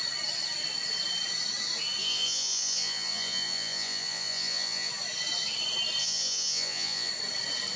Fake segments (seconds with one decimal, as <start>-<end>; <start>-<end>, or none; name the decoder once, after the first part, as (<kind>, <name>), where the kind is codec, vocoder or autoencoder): 2.0-4.9 (vocoder, Vocos); 6.0-7.1